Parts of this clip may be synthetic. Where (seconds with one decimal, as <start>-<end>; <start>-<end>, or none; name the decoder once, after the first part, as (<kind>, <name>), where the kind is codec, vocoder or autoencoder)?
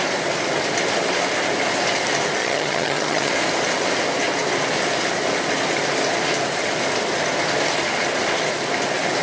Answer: 2.4-3.3 (vocoder, HiFi-GAN)